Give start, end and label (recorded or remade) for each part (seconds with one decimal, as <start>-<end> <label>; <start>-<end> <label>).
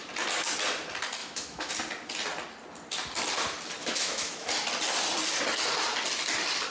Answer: 0.0-1.2 recorded; 1.2-1.7 remade; 1.7-3.8 recorded; 3.8-4.5 remade; 4.5-6.7 recorded